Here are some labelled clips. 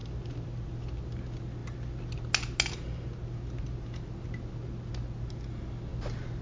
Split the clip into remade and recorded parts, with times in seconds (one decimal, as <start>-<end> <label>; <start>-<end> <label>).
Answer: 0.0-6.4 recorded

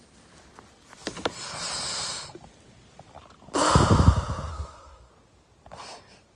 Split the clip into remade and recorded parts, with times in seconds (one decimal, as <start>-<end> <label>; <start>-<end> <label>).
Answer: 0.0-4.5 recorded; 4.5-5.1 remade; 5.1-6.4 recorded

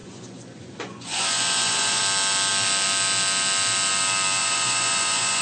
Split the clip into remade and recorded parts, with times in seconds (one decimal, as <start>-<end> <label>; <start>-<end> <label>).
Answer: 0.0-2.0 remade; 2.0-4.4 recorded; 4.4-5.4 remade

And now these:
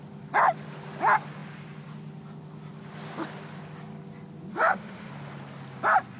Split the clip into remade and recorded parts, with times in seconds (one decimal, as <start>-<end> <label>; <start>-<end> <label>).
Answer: 0.0-4.5 recorded; 4.5-5.1 remade; 5.1-6.2 recorded

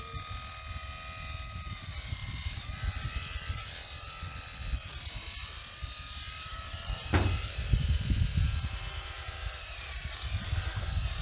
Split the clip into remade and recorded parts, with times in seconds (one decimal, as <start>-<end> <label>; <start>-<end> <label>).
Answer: 0.0-6.5 recorded; 6.5-11.2 remade